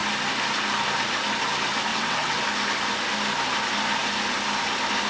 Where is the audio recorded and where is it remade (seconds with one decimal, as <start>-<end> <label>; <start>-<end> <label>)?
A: 0.0-1.9 recorded; 1.9-2.4 remade; 2.4-5.1 recorded

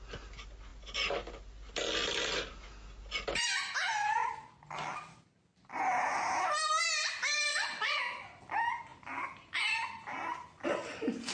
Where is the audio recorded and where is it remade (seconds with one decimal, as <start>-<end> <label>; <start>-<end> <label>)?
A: 0.0-7.5 recorded; 7.5-8.0 remade; 8.0-11.3 recorded